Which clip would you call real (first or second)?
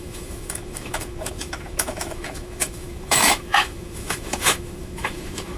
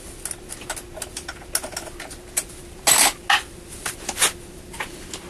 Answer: second